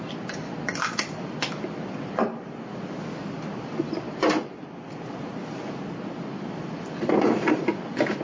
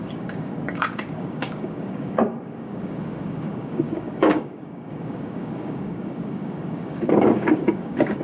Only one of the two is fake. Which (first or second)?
second